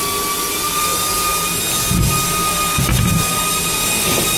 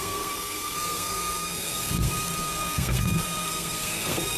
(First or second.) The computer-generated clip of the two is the second